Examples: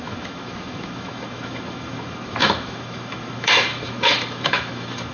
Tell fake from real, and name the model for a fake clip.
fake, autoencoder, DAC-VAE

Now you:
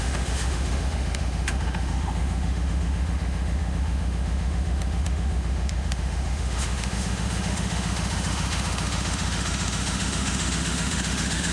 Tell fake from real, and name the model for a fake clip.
fake, autoencoder, DAC-VAE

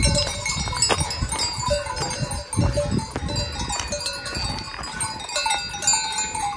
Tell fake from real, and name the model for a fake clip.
real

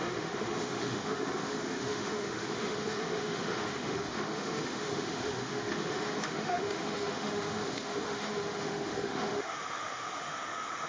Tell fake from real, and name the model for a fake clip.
fake, autoencoder, DAC-VAE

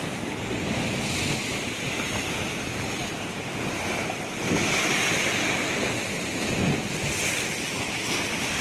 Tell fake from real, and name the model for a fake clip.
real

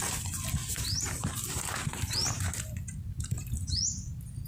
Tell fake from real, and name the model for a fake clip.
real